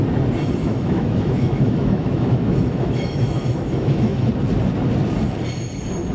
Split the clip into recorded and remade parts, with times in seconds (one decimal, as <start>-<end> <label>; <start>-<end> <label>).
0.0-0.6 recorded; 0.6-4.3 remade; 4.3-6.1 recorded